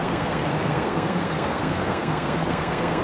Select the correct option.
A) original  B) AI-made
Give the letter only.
B